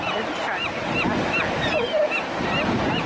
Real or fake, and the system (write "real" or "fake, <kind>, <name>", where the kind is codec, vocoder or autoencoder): real